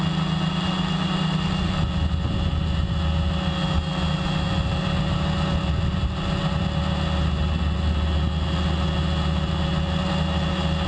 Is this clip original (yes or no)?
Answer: yes